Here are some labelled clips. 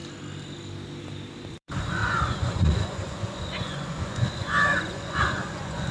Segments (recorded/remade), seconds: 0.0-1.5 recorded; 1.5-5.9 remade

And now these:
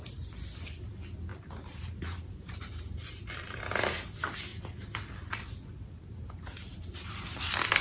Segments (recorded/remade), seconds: 0.0-1.3 recorded; 1.3-3.6 remade; 3.6-7.8 recorded